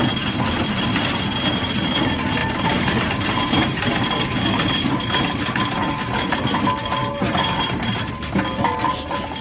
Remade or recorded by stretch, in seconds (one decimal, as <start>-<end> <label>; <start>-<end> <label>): 0.0-2.4 recorded; 2.4-6.6 remade; 6.6-7.0 recorded; 7.0-8.1 remade; 8.1-9.4 recorded